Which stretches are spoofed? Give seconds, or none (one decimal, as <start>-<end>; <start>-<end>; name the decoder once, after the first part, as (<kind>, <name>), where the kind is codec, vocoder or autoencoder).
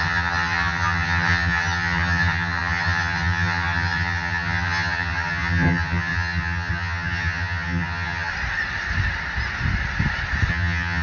0.0-8.3 (vocoder, HiFi-GAN); 10.5-11.0